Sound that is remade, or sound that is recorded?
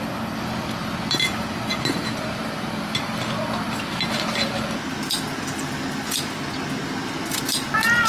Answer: recorded